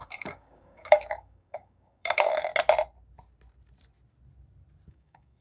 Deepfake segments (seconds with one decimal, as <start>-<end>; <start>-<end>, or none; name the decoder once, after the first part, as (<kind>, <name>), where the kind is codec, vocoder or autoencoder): 0.0-2.5 (codec, DAC); 4.9-5.4